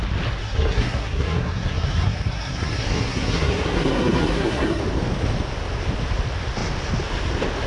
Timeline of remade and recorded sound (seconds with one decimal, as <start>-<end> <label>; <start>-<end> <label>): 0.0-0.4 recorded; 0.4-4.8 remade; 4.8-7.7 recorded